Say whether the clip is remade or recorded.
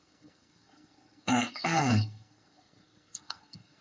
remade